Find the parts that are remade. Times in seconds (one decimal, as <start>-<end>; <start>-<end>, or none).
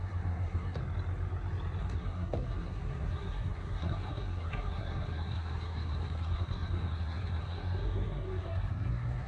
0.0-0.8; 1.8-9.3